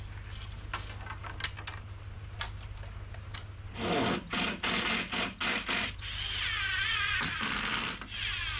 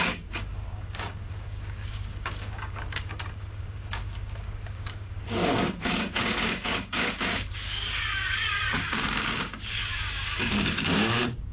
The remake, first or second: second